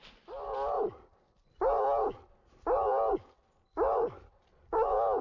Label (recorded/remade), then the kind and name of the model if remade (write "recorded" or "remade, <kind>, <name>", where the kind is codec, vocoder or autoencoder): recorded